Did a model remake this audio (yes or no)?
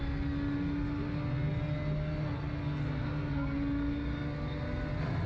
no